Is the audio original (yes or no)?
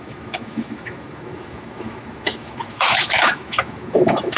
no